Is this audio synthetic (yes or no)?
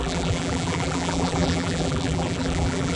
yes